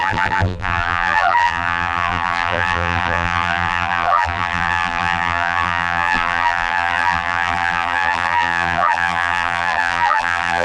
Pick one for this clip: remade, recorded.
remade